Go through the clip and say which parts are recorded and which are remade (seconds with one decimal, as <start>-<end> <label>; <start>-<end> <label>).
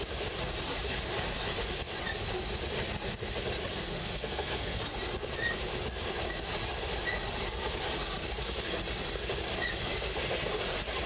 0.0-3.7 recorded; 3.7-4.8 remade; 4.8-11.1 recorded